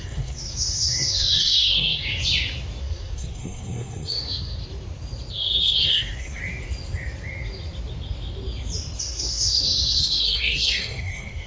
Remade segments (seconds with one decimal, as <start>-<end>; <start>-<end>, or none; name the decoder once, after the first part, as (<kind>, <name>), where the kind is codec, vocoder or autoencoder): 0.0-2.2 (codec, SNAC); 2.8-4.6; 5.3-6.4; 9.0-11.5

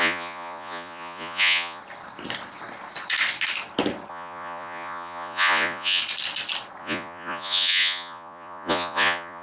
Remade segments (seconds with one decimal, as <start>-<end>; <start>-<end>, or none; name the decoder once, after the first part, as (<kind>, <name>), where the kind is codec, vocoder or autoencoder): 0.0-1.8 (vocoder, Vocos); 4.1-6.0; 6.8-9.4

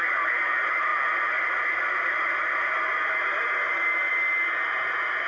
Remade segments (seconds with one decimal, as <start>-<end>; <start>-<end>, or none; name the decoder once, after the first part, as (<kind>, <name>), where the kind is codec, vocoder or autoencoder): none

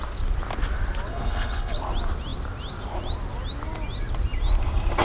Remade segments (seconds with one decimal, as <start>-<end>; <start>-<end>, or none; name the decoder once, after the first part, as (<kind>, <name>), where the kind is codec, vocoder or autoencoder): 1.1-1.8 (codec, HILCodec)

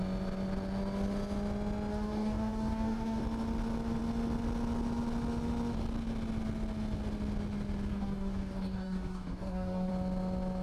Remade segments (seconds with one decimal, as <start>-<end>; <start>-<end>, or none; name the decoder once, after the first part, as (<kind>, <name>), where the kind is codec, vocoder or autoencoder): 1.9-3.2 (codec, DAC); 7.9-9.9

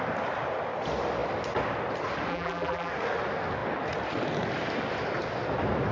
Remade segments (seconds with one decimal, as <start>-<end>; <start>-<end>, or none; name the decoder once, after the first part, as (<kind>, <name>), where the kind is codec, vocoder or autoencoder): 2.3-2.9 (vocoder, BigVGAN v2)

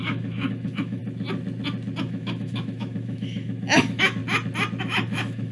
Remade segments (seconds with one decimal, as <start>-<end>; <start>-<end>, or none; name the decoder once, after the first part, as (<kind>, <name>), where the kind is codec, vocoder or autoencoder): 0.0-1.0 (autoencoder, DAC-VAE); 2.0-4.2; 4.8-5.5

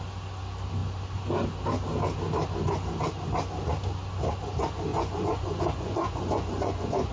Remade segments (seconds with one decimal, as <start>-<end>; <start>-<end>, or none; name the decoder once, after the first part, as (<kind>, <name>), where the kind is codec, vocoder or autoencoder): 4.9-7.1 (vocoder, Vocos)